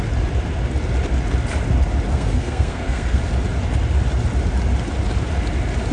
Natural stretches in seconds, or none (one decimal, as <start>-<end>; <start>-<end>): 0.0-2.1; 3.2-5.9